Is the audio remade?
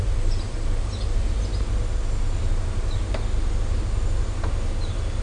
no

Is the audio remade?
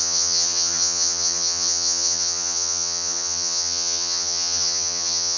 yes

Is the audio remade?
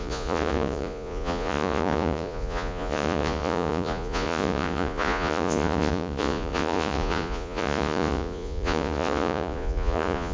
yes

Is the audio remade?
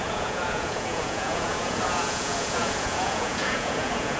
yes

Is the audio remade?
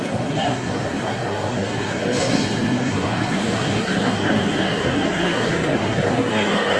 yes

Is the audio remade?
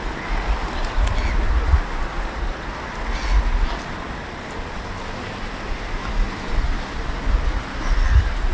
no